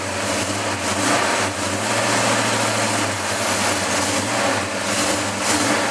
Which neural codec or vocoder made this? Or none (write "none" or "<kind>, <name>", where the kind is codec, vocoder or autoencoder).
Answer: none